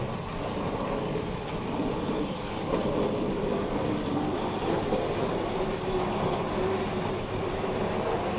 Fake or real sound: real